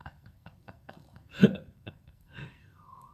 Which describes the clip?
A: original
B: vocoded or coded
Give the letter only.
B